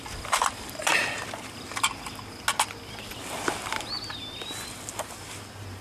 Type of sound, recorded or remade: recorded